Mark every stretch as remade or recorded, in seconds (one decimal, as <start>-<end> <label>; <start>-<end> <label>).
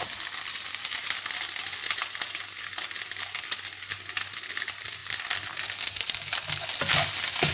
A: 0.0-7.5 recorded